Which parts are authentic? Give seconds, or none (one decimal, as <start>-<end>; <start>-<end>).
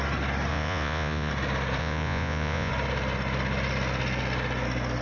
0.0-0.5; 1.3-1.8; 2.7-5.0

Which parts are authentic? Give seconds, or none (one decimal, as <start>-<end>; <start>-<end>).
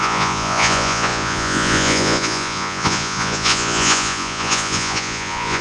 none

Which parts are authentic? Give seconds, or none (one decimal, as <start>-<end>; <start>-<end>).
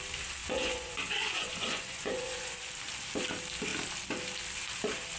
0.0-0.4; 2.7-5.2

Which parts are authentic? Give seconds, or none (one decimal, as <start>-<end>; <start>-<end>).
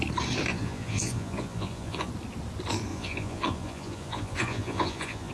0.0-0.5; 2.1-2.9